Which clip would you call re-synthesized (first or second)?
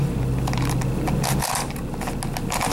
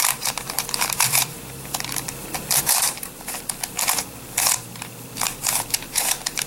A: second